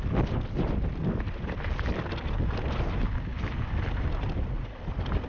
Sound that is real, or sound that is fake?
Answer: real